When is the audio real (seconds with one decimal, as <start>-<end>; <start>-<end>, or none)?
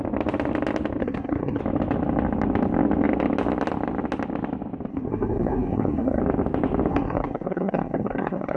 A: 0.0-1.0; 1.6-4.9; 6.2-6.9